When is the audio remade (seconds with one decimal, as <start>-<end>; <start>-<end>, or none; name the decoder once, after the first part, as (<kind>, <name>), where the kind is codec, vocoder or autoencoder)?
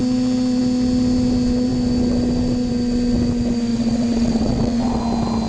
3.7-5.0 (vocoder, WaveNeXt)